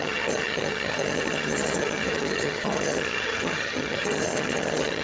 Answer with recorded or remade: remade